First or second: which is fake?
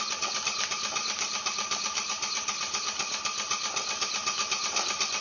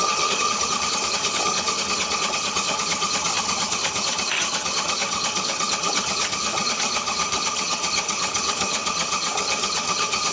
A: second